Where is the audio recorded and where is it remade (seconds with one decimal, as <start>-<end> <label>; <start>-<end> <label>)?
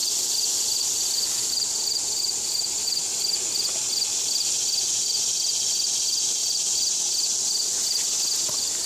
0.0-8.9 recorded